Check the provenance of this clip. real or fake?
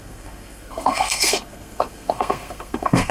fake